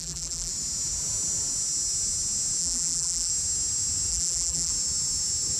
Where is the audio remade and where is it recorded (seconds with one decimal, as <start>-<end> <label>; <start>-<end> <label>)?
0.0-0.5 remade; 0.5-2.6 recorded; 2.6-3.3 remade; 3.3-4.1 recorded; 4.1-4.7 remade; 4.7-5.6 recorded